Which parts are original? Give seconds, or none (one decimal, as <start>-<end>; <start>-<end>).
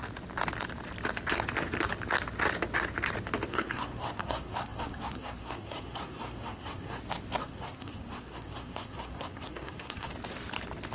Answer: 0.0-3.5; 7.0-7.4; 10.1-10.9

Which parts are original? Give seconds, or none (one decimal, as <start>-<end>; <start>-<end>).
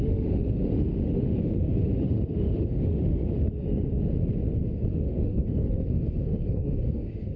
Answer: 4.2-4.9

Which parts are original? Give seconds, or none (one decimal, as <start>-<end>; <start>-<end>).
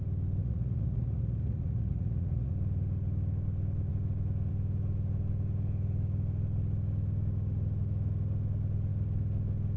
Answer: 0.0-0.4; 2.5-9.8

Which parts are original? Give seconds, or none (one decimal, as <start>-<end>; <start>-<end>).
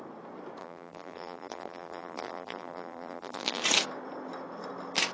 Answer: 0.0-0.6; 3.6-5.1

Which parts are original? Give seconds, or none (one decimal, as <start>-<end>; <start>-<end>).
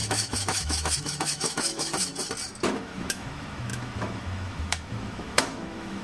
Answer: 2.1-2.7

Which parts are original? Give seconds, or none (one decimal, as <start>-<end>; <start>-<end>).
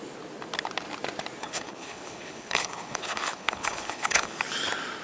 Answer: 0.0-1.4; 4.4-5.0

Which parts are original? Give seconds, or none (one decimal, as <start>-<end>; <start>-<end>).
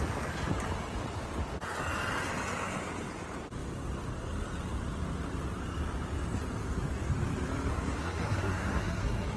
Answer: 0.0-7.7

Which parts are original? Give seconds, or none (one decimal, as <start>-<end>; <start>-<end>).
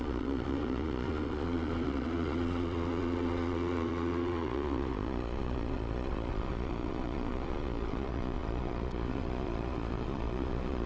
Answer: none